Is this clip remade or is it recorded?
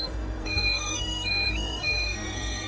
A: remade